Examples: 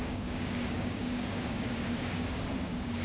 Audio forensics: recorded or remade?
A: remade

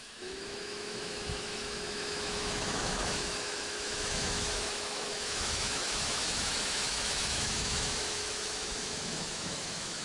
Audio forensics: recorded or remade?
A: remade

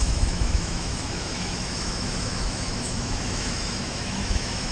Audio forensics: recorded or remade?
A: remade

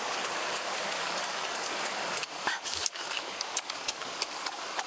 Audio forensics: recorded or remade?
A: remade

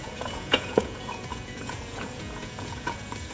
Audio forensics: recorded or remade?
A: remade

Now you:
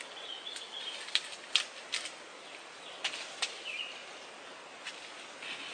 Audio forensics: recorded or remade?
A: recorded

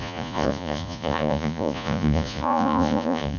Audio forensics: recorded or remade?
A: remade